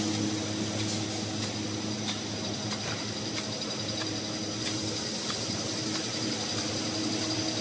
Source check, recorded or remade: recorded